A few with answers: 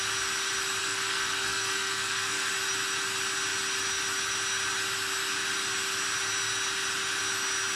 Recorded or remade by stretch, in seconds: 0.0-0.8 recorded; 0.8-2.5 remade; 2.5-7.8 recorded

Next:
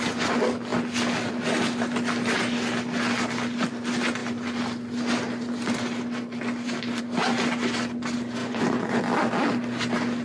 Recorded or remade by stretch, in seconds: 0.0-8.4 recorded; 8.4-9.0 remade; 9.0-10.2 recorded

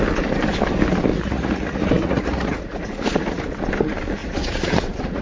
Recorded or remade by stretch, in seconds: 0.0-1.1 recorded; 1.1-3.4 remade; 3.4-4.2 recorded; 4.2-5.2 remade

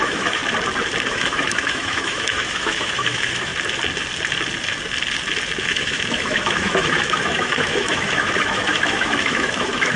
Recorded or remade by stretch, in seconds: 0.0-0.4 remade; 0.4-1.1 recorded; 1.1-3.5 remade; 3.5-5.7 recorded; 5.7-10.0 remade

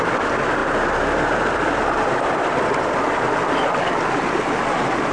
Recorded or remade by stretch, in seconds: 0.0-5.1 recorded

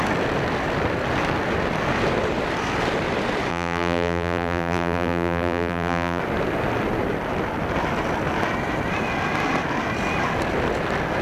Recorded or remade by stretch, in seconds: 0.0-3.5 recorded; 3.5-6.2 remade; 6.2-11.2 recorded